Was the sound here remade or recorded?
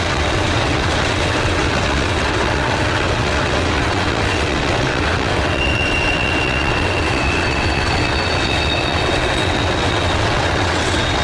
remade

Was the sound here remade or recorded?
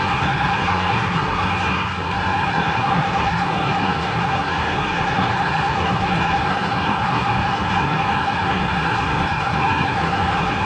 remade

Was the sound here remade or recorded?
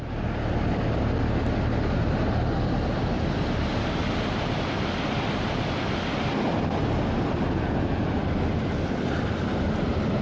recorded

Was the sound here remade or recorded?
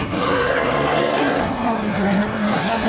remade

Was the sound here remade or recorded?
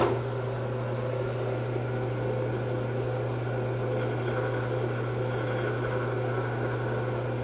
recorded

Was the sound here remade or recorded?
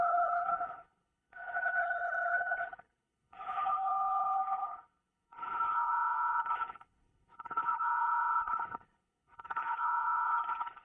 remade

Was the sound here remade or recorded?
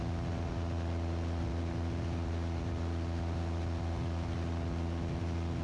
recorded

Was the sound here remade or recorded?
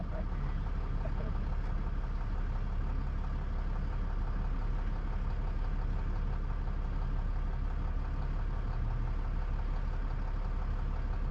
recorded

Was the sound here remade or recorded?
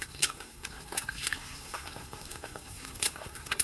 remade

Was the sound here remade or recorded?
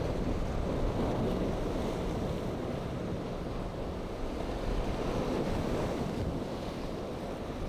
recorded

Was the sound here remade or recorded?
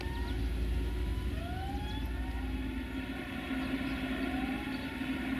recorded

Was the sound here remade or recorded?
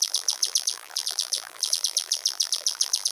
remade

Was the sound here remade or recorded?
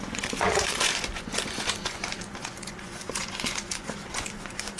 remade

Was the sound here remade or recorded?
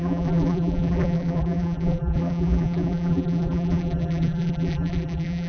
remade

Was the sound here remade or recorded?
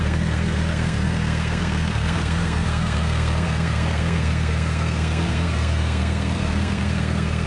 remade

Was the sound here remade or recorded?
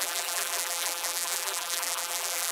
remade